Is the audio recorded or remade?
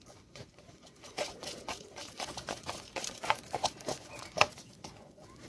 remade